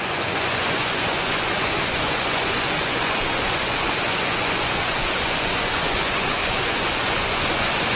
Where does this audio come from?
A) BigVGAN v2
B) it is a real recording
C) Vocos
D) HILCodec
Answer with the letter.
C